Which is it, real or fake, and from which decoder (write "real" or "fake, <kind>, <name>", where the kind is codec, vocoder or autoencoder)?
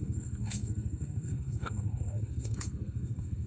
fake, codec, SNAC